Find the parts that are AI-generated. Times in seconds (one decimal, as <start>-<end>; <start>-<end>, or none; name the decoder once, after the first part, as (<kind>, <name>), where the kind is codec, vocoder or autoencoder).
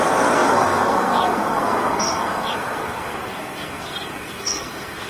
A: 0.0-5.1 (codec, SNAC)